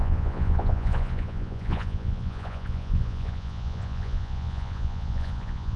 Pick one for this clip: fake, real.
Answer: fake